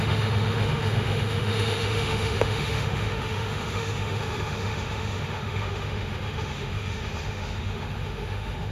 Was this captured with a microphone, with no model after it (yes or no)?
no